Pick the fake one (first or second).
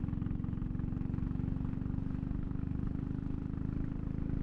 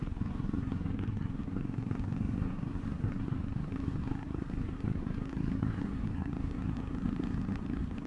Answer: second